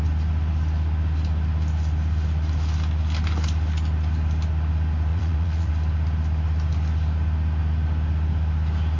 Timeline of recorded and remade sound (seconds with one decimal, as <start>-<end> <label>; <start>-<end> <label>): 0.0-5.1 recorded; 5.1-5.7 remade; 5.7-9.0 recorded